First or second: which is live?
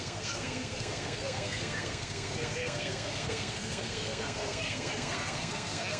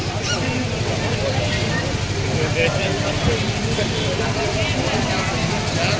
second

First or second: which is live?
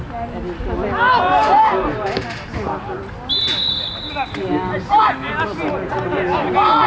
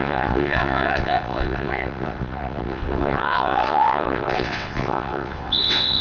first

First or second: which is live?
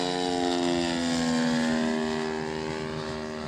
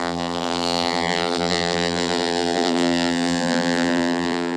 first